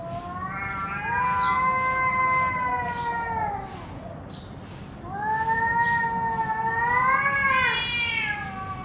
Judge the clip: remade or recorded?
recorded